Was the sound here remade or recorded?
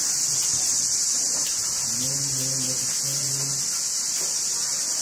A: recorded